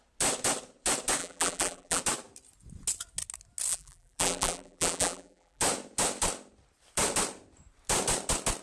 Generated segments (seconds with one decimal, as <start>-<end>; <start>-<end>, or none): 1.2-2.0; 3.7-5.6